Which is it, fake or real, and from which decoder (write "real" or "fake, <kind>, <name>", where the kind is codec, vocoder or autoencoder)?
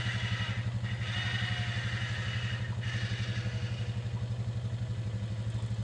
real